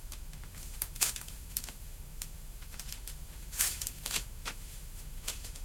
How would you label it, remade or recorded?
remade